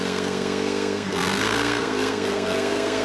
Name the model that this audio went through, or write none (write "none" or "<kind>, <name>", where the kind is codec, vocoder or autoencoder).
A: codec, SNAC